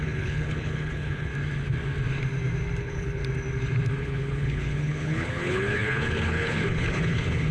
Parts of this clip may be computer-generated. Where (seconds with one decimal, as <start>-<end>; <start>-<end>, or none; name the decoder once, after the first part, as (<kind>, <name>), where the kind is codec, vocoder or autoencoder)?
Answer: 0.0-1.3 (codec, HILCodec); 2.8-3.2; 4.0-7.5